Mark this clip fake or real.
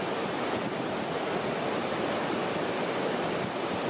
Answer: real